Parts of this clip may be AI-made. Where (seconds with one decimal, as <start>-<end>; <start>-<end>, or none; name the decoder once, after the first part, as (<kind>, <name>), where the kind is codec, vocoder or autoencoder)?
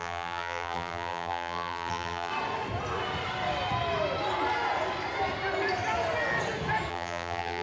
0.0-2.3 (vocoder, BigVGAN v2); 6.9-7.6